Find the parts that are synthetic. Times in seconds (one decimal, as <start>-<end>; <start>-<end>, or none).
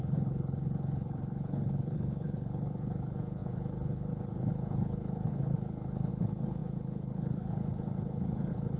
0.0-8.8